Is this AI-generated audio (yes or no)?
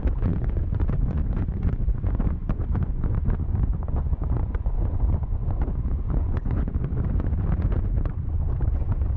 yes